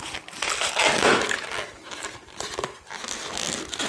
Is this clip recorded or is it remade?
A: recorded